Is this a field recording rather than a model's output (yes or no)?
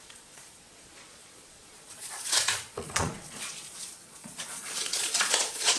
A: no